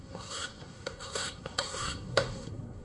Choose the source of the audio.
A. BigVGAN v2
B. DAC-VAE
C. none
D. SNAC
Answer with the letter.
D